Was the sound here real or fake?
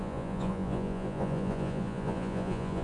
fake